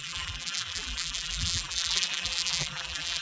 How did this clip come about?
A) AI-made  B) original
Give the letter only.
A